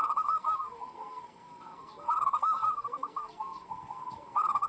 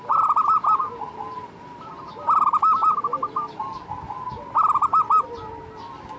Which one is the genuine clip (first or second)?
second